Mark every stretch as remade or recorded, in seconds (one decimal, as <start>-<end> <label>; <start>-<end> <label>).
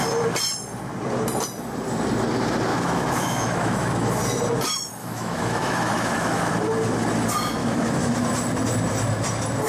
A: 0.0-2.7 recorded; 2.7-4.2 remade; 4.2-5.0 recorded; 5.0-6.5 remade; 6.5-7.6 recorded; 7.6-8.1 remade; 8.1-9.7 recorded